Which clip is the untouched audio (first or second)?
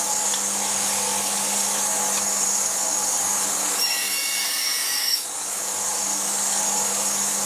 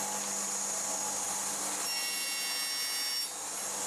second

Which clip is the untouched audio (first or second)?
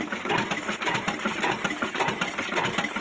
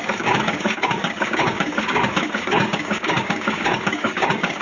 first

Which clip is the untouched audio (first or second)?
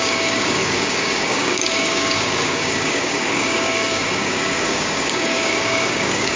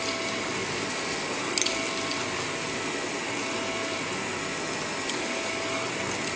second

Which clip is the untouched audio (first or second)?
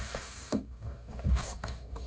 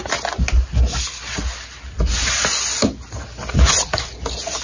second